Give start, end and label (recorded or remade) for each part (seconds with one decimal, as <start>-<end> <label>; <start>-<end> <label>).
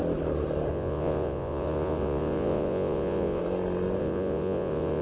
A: 0.0-0.7 recorded; 0.7-3.4 remade; 3.4-4.0 recorded; 4.0-5.0 remade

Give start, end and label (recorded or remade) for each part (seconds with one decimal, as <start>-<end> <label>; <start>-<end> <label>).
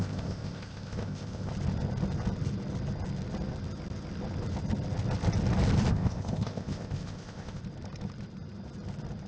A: 0.0-1.5 remade; 1.5-5.9 recorded; 5.9-7.6 remade; 7.6-9.3 recorded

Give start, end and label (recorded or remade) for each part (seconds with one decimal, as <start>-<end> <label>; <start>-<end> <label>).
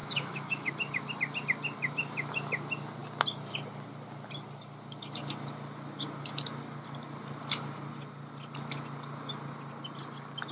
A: 0.0-0.7 remade; 0.7-10.5 recorded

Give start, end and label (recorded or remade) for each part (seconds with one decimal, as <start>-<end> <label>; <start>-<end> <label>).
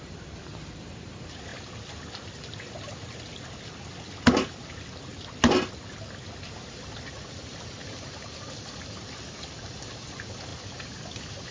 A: 0.0-5.1 remade; 5.1-8.5 recorded; 8.5-10.5 remade; 10.5-11.5 recorded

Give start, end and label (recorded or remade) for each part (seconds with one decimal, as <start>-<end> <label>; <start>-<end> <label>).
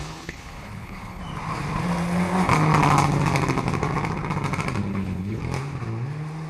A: 0.0-1.2 remade; 1.2-4.9 recorded; 4.9-5.4 remade; 5.4-6.5 recorded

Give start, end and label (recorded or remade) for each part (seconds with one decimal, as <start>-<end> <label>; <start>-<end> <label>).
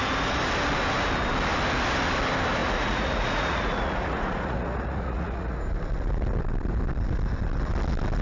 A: 0.0-2.6 recorded; 2.6-5.6 remade; 5.6-8.2 recorded